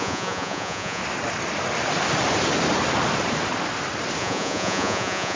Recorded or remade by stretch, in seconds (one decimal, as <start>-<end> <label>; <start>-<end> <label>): 0.0-1.0 remade; 1.0-4.2 recorded; 4.2-5.4 remade